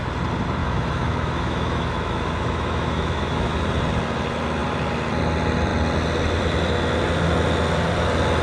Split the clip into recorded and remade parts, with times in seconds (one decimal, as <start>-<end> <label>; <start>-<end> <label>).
0.0-0.6 recorded; 0.6-3.5 remade; 3.5-8.4 recorded